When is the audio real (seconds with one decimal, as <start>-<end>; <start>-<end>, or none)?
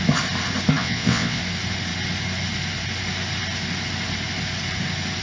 0.0-0.8; 1.4-5.2